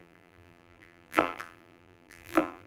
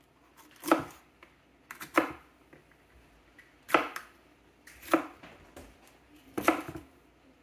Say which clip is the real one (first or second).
second